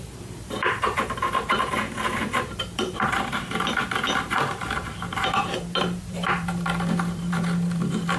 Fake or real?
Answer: fake